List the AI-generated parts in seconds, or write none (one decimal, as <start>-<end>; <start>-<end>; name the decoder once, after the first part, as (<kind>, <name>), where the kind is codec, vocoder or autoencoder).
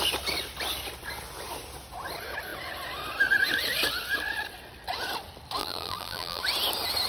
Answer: 5.6-6.4 (vocoder, BigVGAN v2)